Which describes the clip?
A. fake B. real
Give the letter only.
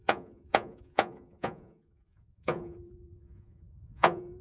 A